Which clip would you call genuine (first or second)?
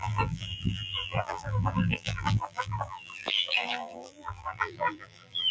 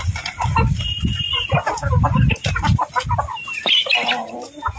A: second